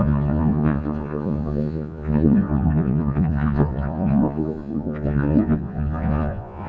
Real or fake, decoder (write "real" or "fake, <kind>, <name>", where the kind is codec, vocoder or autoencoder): fake, vocoder, Vocos